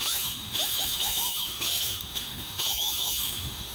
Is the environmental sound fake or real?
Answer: fake